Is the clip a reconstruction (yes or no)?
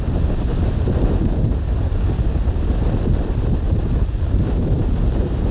no